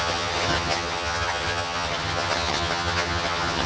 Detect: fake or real fake